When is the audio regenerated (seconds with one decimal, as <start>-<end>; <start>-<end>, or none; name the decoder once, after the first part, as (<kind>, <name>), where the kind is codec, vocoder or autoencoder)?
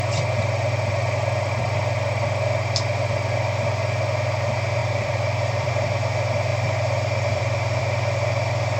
4.8-5.7 (vocoder, BigVGAN v2); 6.5-7.8